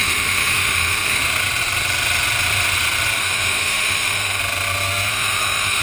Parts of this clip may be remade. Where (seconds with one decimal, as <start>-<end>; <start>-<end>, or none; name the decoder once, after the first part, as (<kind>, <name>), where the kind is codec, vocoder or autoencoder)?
0.0-1.2 (autoencoder, DAC-VAE); 3.2-4.4; 5.1-5.8